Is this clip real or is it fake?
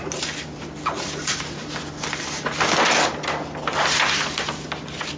real